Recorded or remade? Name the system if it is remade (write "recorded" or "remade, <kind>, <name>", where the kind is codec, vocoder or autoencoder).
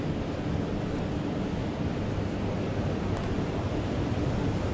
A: recorded